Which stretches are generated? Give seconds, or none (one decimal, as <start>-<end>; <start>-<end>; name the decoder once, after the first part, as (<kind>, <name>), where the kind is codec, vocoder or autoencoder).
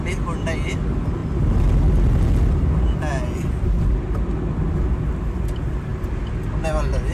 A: none